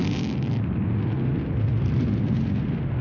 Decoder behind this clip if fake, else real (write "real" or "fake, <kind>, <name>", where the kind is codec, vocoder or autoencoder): real